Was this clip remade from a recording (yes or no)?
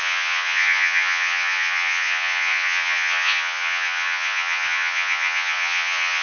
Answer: yes